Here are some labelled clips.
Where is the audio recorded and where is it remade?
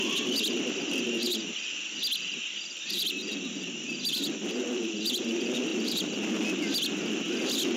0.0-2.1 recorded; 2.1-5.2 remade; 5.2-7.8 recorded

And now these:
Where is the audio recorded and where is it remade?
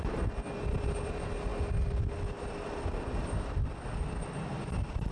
0.0-5.1 recorded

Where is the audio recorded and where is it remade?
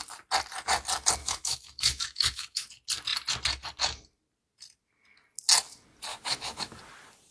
0.0-1.2 recorded; 1.2-2.7 remade; 2.7-6.1 recorded; 6.1-6.8 remade; 6.8-7.3 recorded